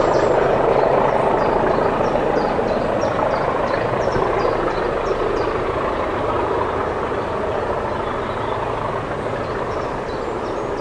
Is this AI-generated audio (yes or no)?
no